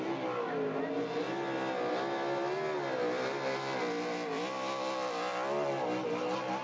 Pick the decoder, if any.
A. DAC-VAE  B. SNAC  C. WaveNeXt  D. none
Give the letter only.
D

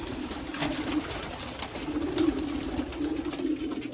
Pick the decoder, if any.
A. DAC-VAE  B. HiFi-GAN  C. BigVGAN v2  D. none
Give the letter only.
D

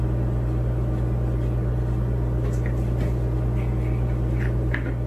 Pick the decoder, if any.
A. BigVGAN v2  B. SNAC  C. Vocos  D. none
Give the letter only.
D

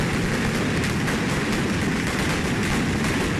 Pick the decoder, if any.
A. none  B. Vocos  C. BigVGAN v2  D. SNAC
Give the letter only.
A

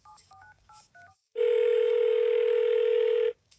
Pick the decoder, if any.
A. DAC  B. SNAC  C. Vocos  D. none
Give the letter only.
A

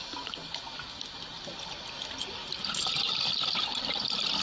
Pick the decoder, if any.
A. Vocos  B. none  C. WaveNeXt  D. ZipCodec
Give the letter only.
B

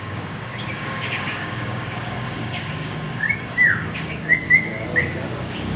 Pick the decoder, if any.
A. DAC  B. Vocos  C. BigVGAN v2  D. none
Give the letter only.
A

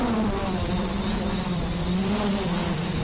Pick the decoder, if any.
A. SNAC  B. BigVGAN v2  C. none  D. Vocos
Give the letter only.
B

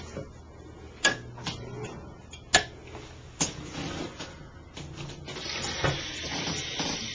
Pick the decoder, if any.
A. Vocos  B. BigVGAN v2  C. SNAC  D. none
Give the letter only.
D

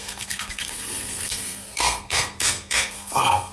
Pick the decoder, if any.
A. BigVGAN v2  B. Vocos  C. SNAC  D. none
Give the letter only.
C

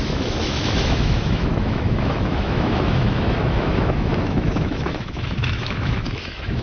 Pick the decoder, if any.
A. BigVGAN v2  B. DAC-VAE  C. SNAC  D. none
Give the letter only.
B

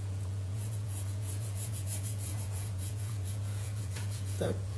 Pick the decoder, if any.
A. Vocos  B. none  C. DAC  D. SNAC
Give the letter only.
A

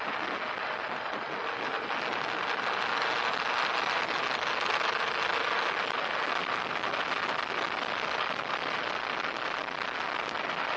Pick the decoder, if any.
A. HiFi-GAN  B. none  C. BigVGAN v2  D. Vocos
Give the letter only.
B